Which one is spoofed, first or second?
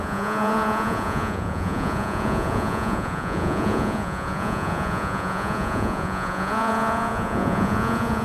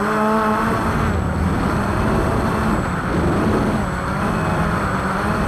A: first